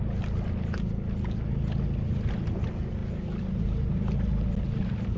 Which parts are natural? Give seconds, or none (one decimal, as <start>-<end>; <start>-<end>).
0.0-5.2